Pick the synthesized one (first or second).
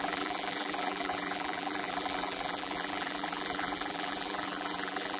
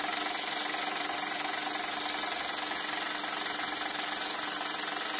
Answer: first